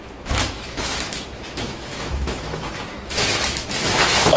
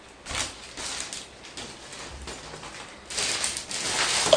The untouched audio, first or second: second